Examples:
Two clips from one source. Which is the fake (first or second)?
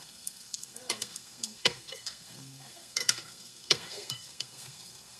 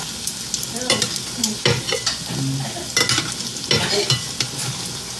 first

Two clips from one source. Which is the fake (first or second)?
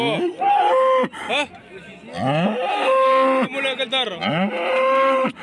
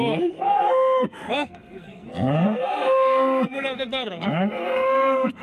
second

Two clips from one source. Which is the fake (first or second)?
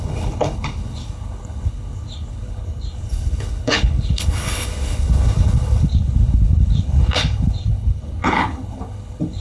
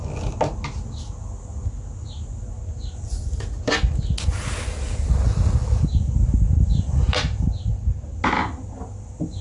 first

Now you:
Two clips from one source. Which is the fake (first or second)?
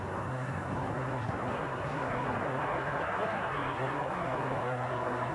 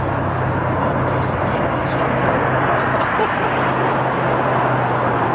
first